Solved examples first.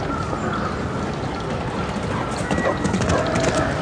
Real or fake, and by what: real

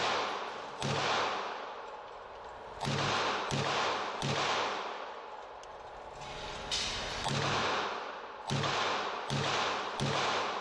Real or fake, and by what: real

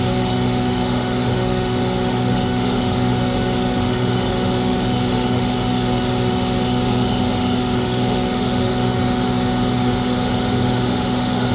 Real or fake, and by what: fake, autoencoder, DAC-VAE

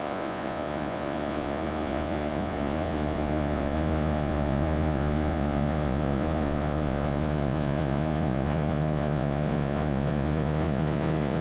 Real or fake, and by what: fake, vocoder, Vocos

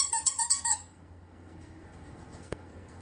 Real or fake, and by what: fake, codec, SNAC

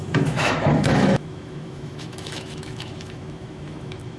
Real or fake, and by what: fake, autoencoder, DAC-VAE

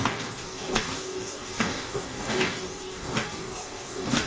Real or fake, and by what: fake, codec, DAC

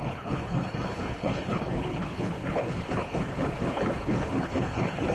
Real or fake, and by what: fake, codec, HILCodec